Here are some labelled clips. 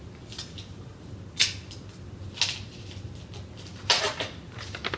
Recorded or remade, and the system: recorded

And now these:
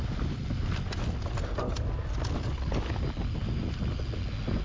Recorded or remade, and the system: recorded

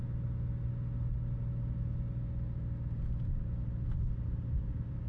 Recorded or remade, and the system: recorded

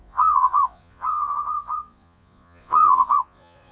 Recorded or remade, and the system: remade, vocoder, Vocos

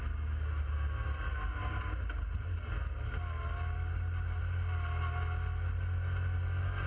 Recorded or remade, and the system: recorded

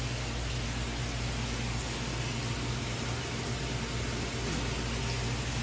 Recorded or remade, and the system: recorded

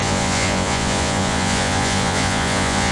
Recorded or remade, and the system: remade, vocoder, Vocos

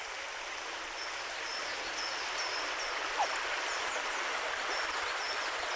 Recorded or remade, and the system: recorded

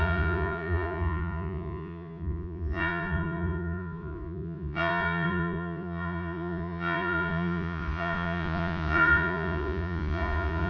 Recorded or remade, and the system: remade, vocoder, Vocos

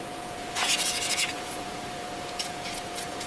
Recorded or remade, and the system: remade, vocoder, Vocos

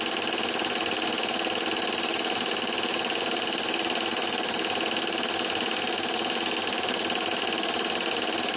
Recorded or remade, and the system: recorded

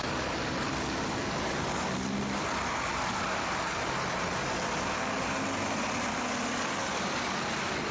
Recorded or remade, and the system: recorded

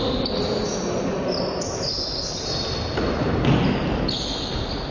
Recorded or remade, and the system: recorded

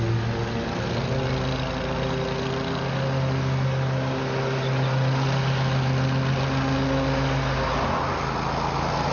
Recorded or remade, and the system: recorded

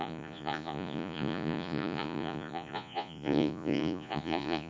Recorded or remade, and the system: remade, vocoder, Vocos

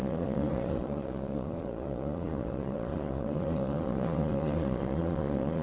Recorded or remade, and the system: remade, vocoder, Vocos